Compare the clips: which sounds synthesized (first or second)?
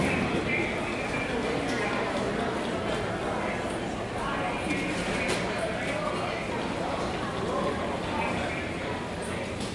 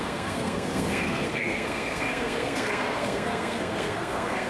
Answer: second